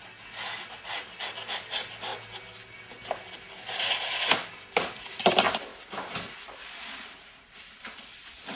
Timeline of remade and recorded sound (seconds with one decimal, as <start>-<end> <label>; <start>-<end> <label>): 0.0-8.6 recorded